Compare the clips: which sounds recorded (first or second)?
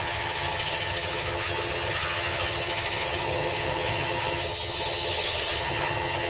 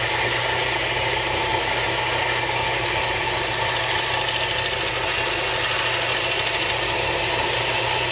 second